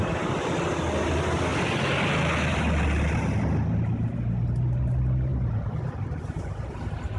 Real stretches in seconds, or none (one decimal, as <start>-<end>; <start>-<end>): 0.0-7.2